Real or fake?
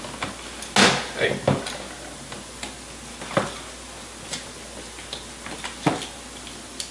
real